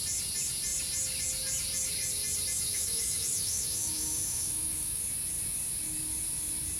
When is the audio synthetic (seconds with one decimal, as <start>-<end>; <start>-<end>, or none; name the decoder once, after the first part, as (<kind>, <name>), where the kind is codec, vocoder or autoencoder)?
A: 2.7-5.0 (autoencoder, DAC-VAE)